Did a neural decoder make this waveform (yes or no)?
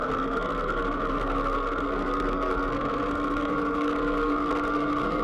yes